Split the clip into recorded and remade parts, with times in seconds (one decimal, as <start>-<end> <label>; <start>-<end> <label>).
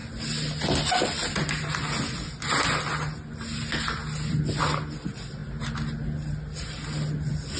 0.0-7.6 recorded